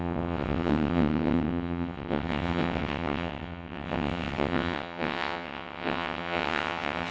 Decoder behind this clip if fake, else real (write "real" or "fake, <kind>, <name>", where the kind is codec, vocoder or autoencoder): fake, vocoder, WaveNeXt